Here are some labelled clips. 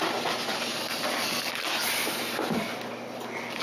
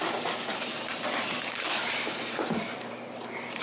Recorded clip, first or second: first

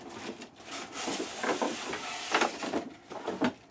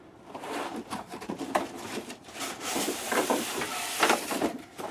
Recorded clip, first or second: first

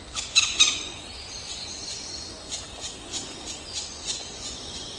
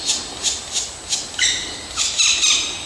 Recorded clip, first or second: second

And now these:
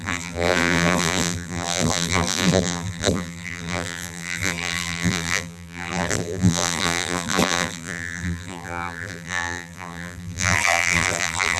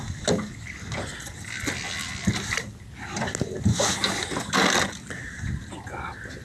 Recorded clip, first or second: second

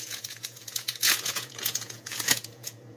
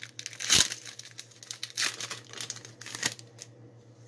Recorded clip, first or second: second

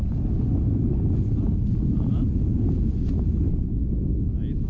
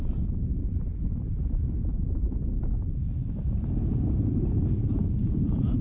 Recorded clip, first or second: first